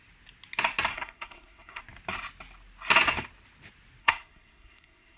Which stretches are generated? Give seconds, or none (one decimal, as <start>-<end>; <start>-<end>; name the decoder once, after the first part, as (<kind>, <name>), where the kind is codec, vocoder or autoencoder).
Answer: 0.9-1.8 (codec, SNAC); 4.0-5.2